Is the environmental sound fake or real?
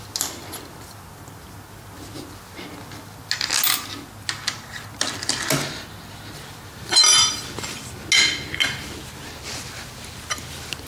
real